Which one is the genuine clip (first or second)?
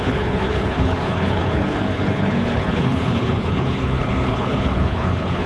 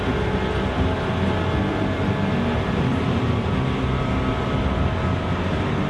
second